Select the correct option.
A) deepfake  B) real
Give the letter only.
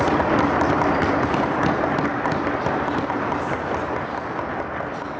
B